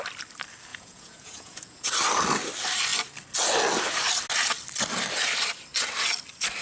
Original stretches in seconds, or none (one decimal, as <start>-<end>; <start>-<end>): 0.0-0.7; 1.9-6.6